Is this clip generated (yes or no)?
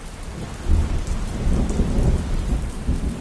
no